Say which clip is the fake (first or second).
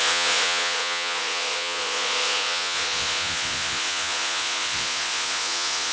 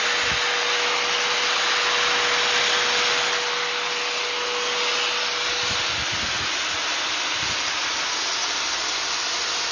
first